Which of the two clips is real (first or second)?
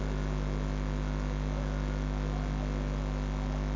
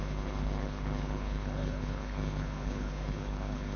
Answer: first